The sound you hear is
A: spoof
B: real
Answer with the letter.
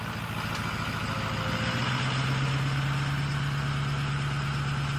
B